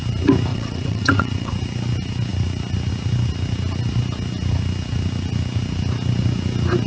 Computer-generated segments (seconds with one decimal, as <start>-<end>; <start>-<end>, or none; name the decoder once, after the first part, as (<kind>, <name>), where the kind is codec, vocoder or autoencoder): 0.5-1.5 (vocoder, WaveNeXt)